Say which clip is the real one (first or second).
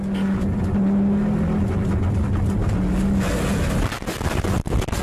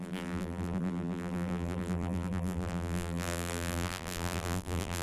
first